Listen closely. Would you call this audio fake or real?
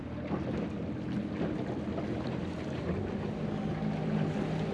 real